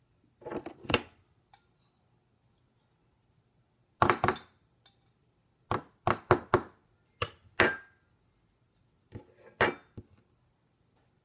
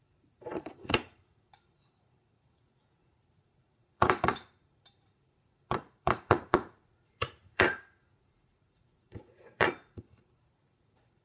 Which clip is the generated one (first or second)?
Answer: second